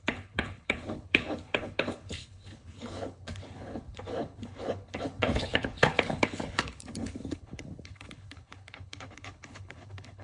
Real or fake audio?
fake